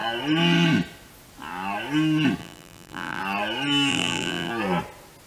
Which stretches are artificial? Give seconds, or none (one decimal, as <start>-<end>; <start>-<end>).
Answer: 2.4-3.2; 3.9-4.5